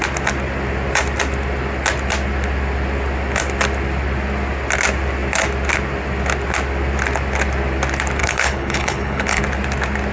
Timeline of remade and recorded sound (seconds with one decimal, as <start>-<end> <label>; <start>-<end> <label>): 0.0-8.2 recorded; 8.2-9.4 remade; 9.4-10.1 recorded